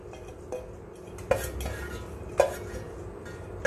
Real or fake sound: real